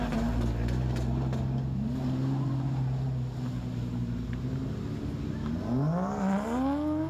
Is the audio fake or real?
real